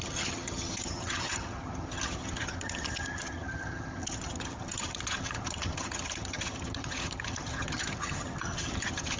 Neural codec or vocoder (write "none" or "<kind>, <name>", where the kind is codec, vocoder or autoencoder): vocoder, HiFi-GAN